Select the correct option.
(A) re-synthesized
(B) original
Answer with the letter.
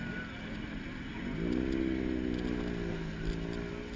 B